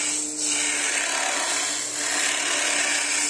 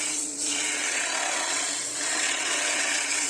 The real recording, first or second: first